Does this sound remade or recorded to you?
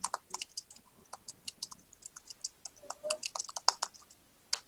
recorded